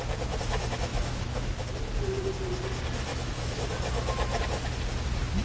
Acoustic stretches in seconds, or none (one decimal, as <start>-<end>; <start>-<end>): 0.0-0.9; 1.5-3.1; 3.7-5.4